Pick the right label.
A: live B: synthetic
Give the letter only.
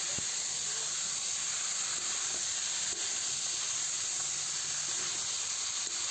A